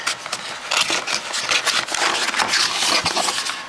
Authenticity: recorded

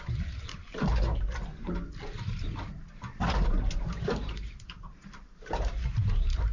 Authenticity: remade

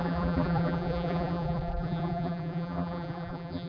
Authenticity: remade